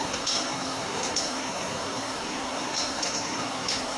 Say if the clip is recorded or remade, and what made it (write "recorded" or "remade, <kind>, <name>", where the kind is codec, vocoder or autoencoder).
remade, codec, SNAC